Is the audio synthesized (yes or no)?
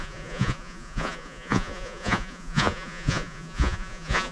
yes